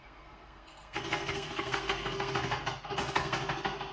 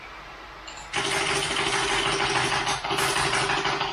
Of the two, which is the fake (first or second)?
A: first